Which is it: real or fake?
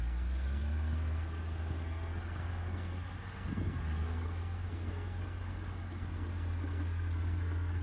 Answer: fake